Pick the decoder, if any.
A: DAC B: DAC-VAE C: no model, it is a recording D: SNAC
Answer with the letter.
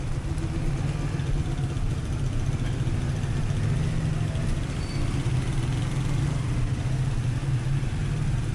C